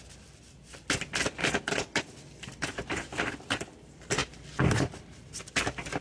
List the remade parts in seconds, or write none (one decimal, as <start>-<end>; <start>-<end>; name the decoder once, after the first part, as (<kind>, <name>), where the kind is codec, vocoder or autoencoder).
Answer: 1.4-2.0 (vocoder, BigVGAN v2)

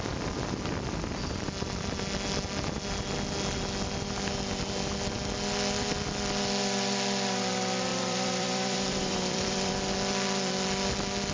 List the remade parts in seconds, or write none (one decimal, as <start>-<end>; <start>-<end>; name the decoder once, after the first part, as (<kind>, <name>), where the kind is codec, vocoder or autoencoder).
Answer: 7.9-9.7 (vocoder, BigVGAN v2)

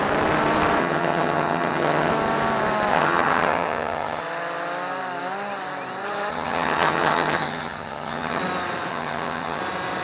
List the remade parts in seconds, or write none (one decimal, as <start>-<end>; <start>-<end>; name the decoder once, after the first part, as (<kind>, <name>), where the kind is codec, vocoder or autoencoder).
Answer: 0.8-2.1 (vocoder, HiFi-GAN); 2.9-4.2; 6.3-8.4; 8.9-9.6